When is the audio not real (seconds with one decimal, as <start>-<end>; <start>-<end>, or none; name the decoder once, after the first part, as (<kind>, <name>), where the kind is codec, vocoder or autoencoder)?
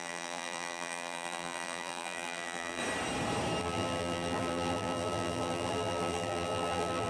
0.0-2.8 (vocoder, BigVGAN v2); 3.6-7.1